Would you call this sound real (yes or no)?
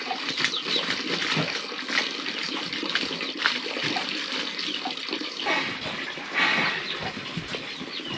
yes